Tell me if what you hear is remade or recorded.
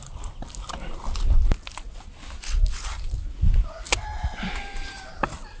recorded